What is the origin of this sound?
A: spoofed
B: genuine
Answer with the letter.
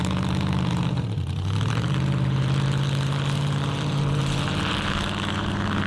A